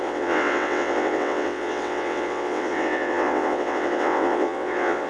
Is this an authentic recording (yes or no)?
no